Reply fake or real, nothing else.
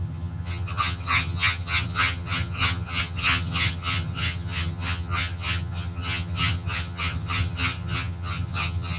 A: fake